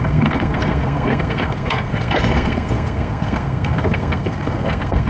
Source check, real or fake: fake